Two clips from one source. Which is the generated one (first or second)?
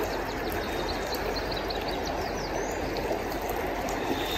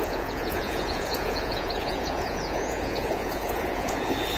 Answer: second